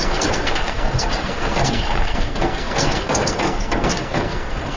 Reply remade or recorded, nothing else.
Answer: remade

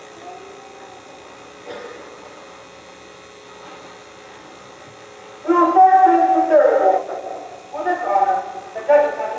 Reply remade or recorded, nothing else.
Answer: recorded